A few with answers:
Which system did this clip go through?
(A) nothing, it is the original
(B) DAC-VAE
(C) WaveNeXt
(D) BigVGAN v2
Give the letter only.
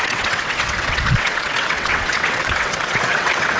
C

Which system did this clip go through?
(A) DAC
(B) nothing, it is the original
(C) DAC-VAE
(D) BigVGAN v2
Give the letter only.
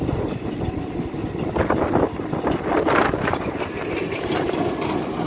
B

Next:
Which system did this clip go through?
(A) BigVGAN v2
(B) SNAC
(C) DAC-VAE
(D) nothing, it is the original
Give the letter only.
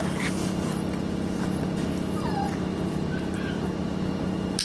D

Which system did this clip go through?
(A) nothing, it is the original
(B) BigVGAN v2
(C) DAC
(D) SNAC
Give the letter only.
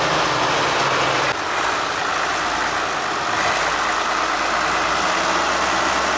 A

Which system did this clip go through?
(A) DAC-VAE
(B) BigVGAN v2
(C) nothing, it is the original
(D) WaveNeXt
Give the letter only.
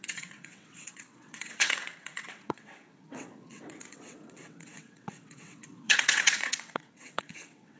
D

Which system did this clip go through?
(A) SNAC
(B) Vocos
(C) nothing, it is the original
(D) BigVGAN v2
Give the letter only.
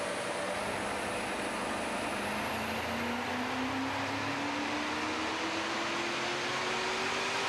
C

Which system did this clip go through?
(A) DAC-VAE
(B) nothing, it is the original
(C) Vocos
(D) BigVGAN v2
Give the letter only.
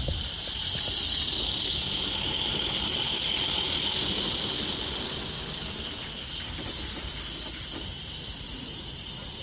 B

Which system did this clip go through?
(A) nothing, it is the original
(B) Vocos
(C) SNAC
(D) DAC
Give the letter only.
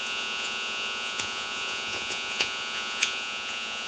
B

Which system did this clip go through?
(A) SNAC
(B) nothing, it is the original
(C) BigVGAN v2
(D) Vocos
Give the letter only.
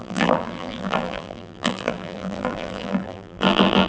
C